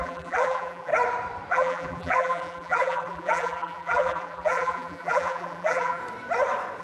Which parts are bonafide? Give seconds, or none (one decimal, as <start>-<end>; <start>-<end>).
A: 0.9-1.5; 6.0-6.8